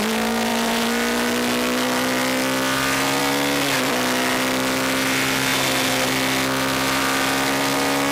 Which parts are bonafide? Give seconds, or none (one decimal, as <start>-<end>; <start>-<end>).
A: 0.0-8.1